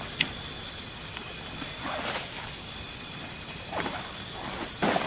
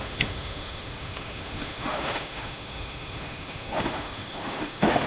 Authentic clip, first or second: first